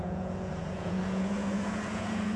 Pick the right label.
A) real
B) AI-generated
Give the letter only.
B